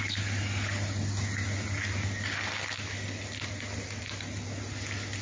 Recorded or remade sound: recorded